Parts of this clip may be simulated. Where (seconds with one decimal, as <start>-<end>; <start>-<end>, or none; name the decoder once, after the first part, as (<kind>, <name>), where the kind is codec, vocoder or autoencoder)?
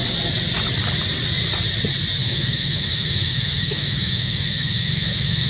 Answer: 2.2-5.5 (autoencoder, DAC-VAE)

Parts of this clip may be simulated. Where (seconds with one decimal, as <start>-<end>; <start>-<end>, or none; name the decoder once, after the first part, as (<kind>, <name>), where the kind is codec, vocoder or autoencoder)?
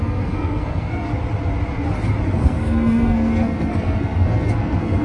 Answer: 0.0-1.1 (codec, SNAC); 2.3-5.0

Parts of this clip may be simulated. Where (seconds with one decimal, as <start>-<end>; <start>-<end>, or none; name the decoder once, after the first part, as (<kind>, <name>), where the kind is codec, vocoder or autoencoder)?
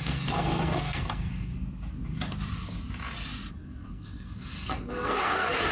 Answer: 0.0-1.5 (codec, SNAC); 3.5-5.7